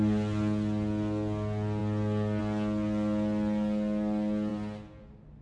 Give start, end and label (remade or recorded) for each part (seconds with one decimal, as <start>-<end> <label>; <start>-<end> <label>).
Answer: 0.0-5.4 recorded